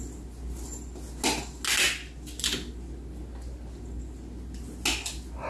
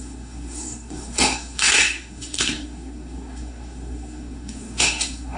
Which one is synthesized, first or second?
second